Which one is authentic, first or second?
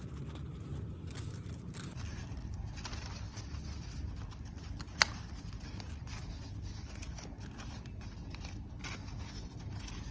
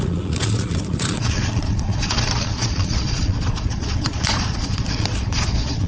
first